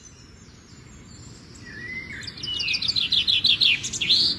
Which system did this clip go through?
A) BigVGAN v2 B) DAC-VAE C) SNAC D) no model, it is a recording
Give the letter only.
D